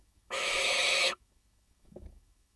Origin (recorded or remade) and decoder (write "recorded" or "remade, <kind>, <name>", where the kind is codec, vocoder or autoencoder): remade, autoencoder, DAC-VAE